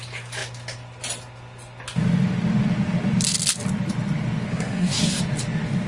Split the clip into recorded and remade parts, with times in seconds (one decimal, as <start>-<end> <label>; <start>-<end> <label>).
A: 0.0-4.5 recorded; 4.5-5.2 remade; 5.2-5.9 recorded